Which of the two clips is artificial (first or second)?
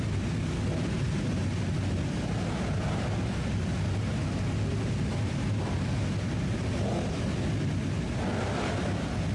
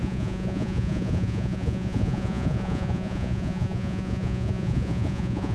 second